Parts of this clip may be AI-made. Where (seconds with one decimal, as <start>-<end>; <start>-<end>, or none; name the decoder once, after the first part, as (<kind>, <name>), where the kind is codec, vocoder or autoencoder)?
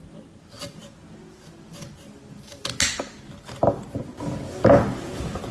none